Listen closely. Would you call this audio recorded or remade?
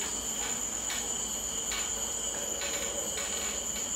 recorded